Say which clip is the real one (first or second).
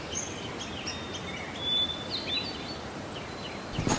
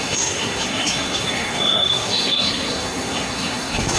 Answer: first